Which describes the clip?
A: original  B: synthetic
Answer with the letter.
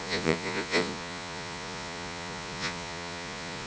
B